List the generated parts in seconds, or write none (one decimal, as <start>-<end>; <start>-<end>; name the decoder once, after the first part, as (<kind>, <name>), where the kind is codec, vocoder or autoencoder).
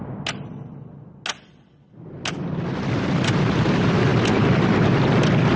none